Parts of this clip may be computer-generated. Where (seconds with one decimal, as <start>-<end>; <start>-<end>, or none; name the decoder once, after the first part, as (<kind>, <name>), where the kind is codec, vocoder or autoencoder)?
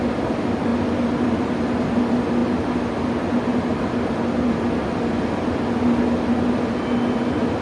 0.7-1.4 (vocoder, BigVGAN v2); 3.5-5.5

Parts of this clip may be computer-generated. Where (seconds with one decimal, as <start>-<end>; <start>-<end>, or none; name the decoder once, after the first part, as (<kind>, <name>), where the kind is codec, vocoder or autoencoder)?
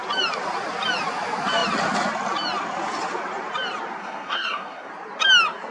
4.0-4.9 (codec, SNAC)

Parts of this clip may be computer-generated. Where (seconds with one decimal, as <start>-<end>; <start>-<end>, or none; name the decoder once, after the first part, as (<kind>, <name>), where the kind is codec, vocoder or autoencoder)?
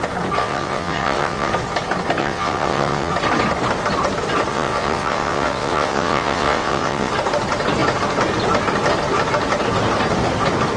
0.4-1.5 (vocoder, WaveNeXt); 2.2-3.1; 4.5-7.1